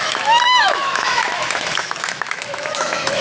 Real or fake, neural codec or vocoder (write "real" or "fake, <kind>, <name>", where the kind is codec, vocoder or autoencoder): fake, autoencoder, DAC-VAE